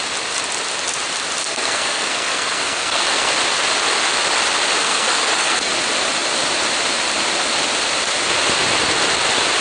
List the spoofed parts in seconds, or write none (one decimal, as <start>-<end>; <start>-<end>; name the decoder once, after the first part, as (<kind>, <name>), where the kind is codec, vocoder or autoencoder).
1.4-3.3 (codec, SNAC); 4.8-5.7